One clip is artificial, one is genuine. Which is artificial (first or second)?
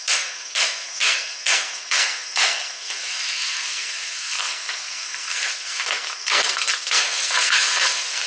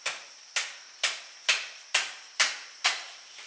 first